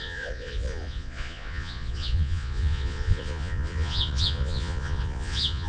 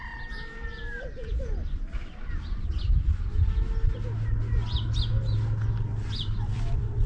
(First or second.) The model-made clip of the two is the first